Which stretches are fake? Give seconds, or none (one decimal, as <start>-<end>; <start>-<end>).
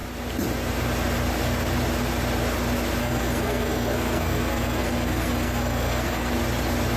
3.0-6.3